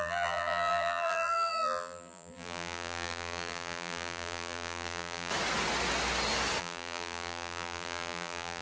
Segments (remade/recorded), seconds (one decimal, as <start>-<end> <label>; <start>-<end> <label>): 0.0-5.3 remade; 5.3-6.6 recorded; 6.6-8.6 remade